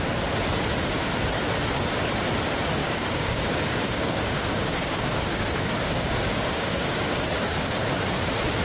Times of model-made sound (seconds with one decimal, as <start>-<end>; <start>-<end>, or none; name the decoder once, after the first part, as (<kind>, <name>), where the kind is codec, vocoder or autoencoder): 2.8-7.7 (codec, DAC)